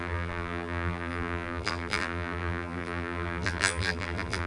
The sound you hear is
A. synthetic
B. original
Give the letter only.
A